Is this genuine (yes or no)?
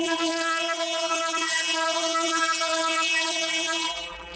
no